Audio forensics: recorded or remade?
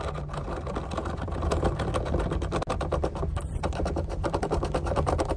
recorded